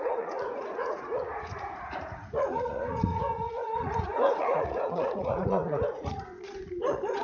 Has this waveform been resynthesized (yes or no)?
yes